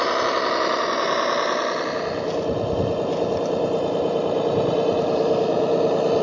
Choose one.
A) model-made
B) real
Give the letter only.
B